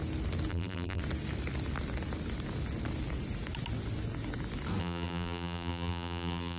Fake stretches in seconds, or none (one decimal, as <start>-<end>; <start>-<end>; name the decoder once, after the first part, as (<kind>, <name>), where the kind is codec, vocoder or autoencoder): 0.5-1.0 (vocoder, BigVGAN v2); 4.8-6.6